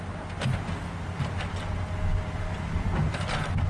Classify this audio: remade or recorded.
recorded